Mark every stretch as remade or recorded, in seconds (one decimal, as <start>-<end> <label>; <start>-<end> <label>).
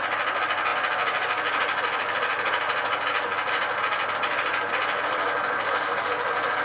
0.0-6.6 recorded